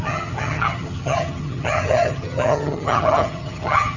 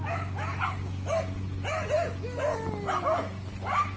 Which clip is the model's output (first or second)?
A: first